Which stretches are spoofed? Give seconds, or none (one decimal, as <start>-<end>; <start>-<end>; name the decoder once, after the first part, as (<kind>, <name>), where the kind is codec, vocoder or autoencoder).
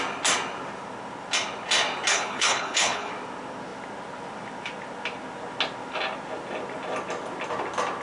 2.1-3.1 (codec, HILCodec)